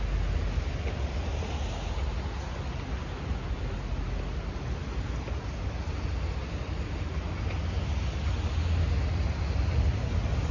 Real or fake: real